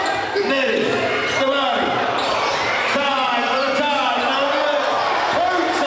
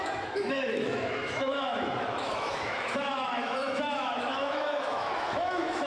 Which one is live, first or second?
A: first